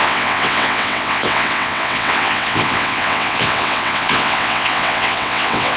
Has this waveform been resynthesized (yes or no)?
yes